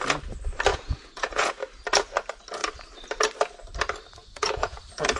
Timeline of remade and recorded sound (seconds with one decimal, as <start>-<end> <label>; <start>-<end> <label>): 0.0-0.7 recorded; 0.7-1.5 remade; 1.5-4.2 recorded; 4.2-4.8 remade; 4.8-5.2 recorded